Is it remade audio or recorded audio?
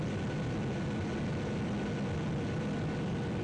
recorded